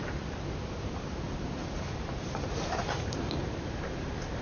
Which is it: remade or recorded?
remade